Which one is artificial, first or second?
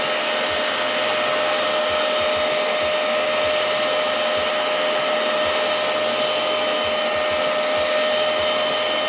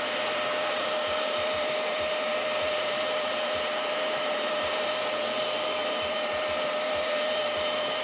second